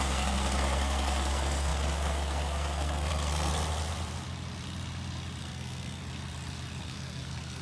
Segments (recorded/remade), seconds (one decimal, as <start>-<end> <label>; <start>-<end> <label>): 0.0-3.5 remade; 3.5-5.4 recorded; 5.4-6.0 remade; 6.0-6.8 recorded; 6.8-7.6 remade